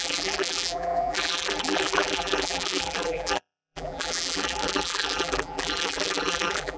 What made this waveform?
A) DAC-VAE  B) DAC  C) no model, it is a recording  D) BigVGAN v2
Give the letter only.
D